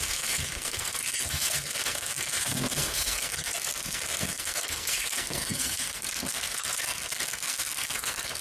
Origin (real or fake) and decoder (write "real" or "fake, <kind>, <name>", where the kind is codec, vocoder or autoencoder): fake, codec, SNAC